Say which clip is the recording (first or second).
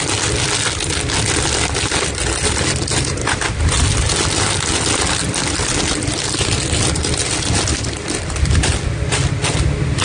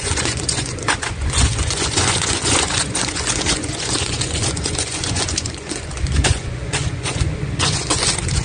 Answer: first